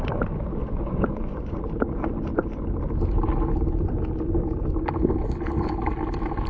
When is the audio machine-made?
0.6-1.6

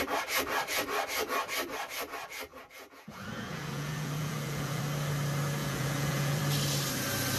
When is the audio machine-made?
2.5-4.8; 5.6-6.4

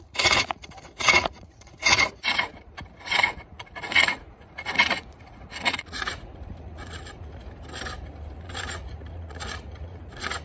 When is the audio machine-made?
0.0-7.4; 8.4-10.4

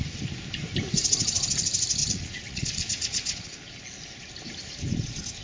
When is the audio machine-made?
2.0-3.8

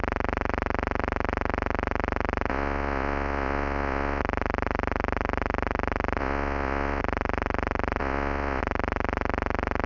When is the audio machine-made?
2.5-4.2; 6.2-7.0; 8.0-8.6

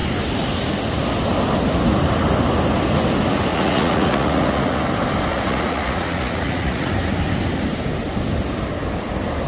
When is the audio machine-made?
3.5-4.8; 5.3-6.9

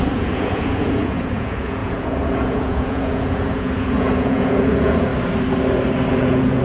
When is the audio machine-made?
0.0-5.1; 6.1-6.6

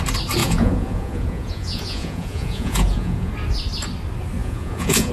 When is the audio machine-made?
0.4-3.3; 4.4-5.1